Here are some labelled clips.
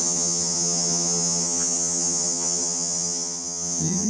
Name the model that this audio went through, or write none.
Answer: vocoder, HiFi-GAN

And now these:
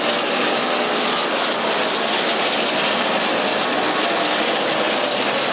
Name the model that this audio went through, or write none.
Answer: none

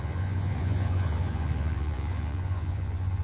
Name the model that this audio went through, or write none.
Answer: vocoder, Vocos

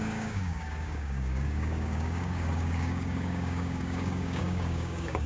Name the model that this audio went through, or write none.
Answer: codec, DAC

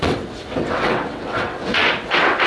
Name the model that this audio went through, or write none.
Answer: vocoder, WaveNeXt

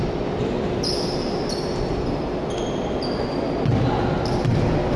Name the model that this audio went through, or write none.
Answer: none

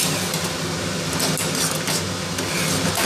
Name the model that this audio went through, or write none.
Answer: none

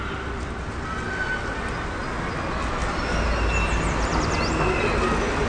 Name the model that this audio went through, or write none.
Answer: none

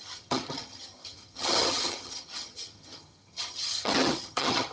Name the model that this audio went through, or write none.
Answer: vocoder, HiFi-GAN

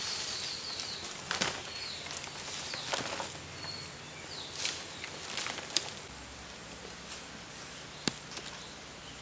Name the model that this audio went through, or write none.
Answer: none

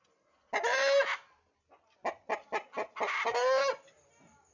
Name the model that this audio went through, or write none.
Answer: none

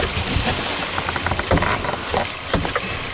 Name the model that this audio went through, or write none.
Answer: none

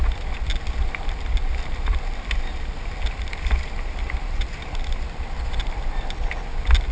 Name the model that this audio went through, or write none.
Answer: none